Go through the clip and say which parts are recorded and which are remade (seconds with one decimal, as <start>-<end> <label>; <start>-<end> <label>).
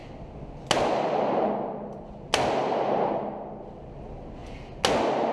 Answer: 0.0-5.3 recorded